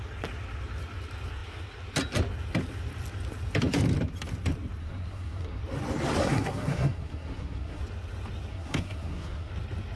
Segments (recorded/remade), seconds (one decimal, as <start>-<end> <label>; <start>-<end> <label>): 0.0-4.8 recorded; 4.8-5.6 remade; 5.6-6.2 recorded; 6.2-7.8 remade; 7.8-8.5 recorded; 8.5-9.5 remade; 9.5-10.0 recorded